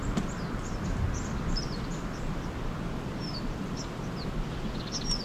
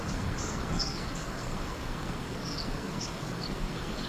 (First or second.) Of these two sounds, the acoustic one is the first